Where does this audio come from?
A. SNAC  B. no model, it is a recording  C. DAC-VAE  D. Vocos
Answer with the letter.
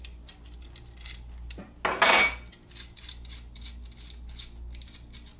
B